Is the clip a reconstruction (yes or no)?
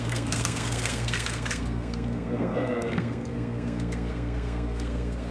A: yes